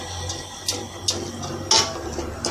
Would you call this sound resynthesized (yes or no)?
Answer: no